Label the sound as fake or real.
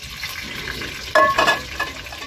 real